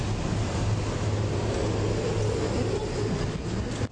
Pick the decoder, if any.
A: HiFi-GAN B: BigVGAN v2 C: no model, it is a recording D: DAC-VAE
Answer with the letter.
C